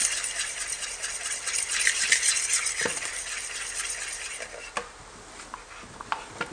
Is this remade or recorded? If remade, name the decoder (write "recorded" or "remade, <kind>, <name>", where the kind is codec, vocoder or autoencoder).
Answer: recorded